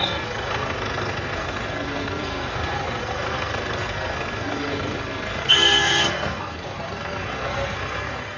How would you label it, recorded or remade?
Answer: remade